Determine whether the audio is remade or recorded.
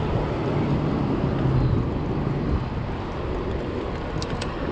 recorded